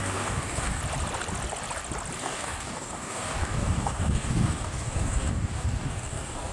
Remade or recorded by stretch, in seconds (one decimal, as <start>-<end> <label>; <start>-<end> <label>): 0.0-0.8 remade; 0.8-2.2 recorded; 2.2-6.5 remade